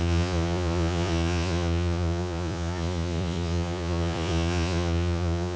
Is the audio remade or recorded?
remade